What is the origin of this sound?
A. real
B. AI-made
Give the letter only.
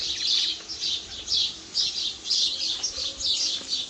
A